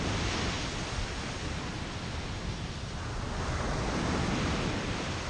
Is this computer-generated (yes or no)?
no